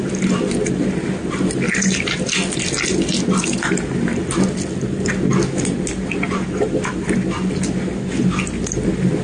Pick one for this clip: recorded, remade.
recorded